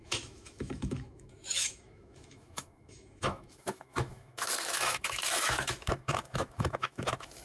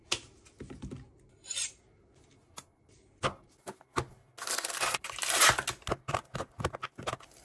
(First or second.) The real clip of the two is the second